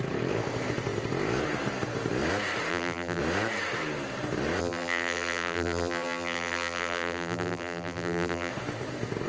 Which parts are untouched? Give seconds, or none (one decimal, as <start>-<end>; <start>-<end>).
0.0-2.7; 3.2-4.6; 8.5-9.3